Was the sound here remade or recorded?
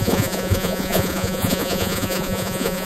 remade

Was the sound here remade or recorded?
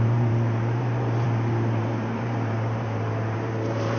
remade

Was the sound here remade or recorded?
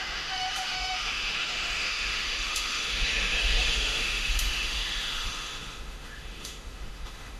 remade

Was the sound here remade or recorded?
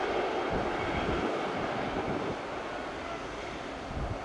recorded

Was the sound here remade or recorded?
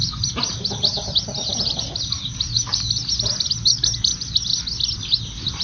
recorded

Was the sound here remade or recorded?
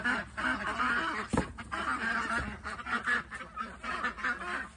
recorded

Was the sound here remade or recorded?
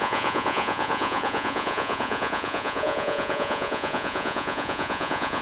remade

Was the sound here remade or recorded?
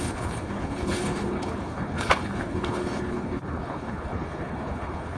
remade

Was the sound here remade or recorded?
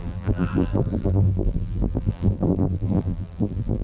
remade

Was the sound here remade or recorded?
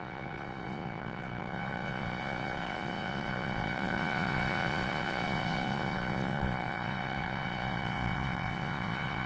remade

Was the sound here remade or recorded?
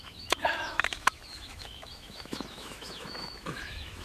remade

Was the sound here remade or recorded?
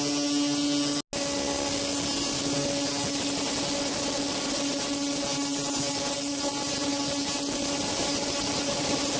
recorded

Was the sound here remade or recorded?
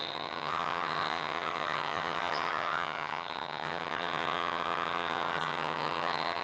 remade